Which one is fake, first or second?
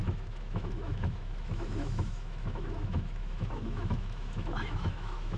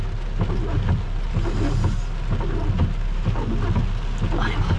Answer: first